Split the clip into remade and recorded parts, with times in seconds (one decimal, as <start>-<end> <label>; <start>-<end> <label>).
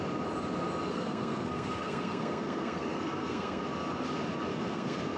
0.0-0.9 recorded; 0.9-3.6 remade; 3.6-4.5 recorded; 4.5-5.2 remade